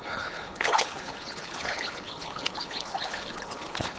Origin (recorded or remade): remade